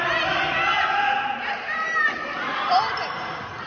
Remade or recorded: recorded